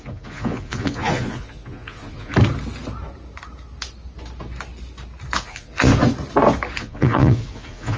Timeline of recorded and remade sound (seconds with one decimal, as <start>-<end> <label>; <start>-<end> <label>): 0.0-2.3 remade; 2.3-5.4 recorded; 5.4-5.9 remade; 5.9-6.8 recorded; 6.8-8.0 remade